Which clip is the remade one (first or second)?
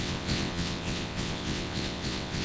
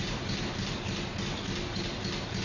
first